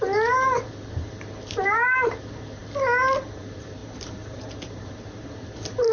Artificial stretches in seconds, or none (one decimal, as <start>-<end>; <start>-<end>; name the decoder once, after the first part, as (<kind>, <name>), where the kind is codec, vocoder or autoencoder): 0.0-2.6 (vocoder, BigVGAN v2); 3.3-5.9